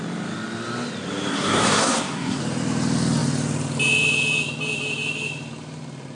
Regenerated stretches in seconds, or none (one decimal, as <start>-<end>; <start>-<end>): 1.3-2.4